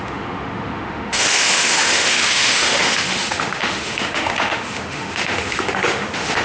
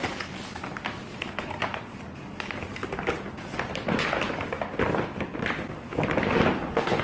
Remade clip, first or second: first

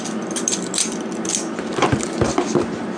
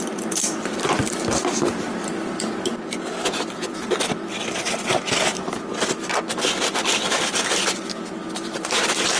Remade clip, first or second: second